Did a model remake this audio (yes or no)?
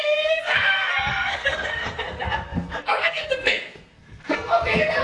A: yes